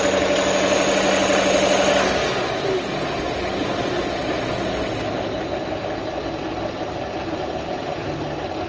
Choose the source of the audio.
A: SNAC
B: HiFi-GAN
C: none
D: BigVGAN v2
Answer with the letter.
C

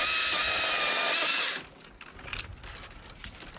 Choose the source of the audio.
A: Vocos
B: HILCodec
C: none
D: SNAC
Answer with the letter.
C